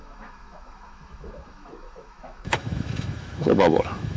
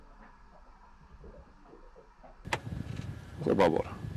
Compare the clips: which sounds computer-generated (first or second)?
first